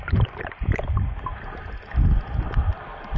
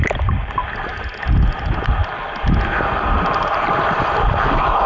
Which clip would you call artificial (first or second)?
first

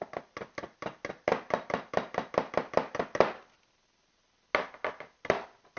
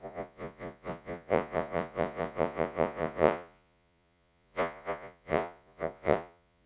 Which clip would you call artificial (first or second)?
second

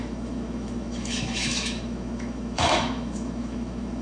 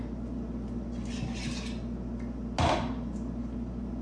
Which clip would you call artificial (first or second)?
first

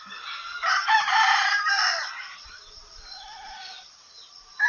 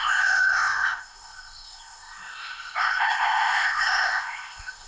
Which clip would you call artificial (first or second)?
second